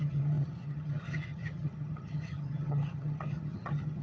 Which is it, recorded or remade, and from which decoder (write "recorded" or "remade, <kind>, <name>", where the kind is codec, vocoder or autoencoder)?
remade, vocoder, HiFi-GAN